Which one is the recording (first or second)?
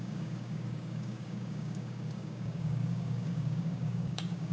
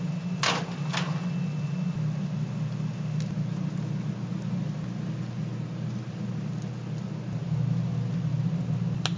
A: second